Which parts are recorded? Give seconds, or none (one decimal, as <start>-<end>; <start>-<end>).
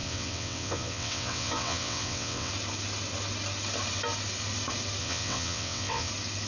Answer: 2.5-5.0; 6.1-6.5